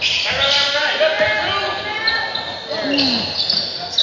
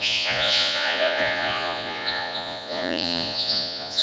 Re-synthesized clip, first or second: second